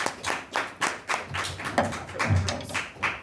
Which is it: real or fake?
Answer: real